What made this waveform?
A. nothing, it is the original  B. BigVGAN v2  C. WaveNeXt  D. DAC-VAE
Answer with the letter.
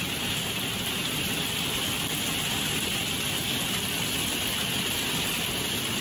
A